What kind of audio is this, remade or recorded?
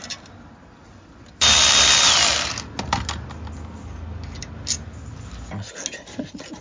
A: recorded